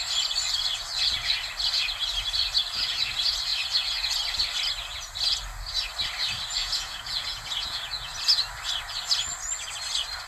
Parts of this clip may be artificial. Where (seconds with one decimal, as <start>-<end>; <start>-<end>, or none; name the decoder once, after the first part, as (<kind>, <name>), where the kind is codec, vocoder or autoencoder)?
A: 6.6-8.1 (vocoder, Vocos)